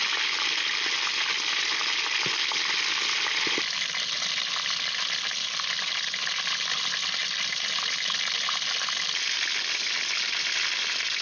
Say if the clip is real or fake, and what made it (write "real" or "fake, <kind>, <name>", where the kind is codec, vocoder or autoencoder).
real